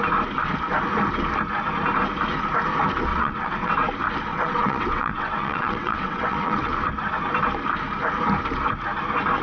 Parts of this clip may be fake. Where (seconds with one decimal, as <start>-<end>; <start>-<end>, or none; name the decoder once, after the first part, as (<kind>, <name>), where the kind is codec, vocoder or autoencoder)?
3.1-3.7 (vocoder, WaveNeXt); 4.3-6.7